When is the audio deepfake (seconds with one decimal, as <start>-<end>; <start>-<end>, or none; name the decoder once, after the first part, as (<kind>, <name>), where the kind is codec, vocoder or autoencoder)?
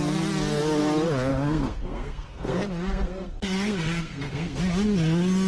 1.3-4.6 (codec, SNAC)